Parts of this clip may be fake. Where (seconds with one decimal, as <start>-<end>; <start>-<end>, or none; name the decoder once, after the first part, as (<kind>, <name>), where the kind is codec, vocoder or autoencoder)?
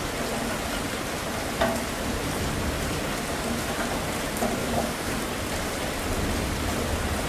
4.6-5.2 (codec, DAC)